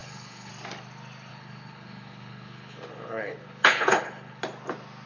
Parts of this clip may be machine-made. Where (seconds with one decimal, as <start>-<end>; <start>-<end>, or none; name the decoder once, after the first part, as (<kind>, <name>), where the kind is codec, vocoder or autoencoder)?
0.0-0.5 (codec, HILCodec); 1.3-4.4